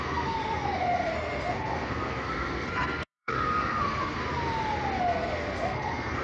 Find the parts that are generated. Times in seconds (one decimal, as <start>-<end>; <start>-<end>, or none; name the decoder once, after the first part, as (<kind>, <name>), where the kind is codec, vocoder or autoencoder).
0.0-4.2 (codec, SNAC); 5.0-6.2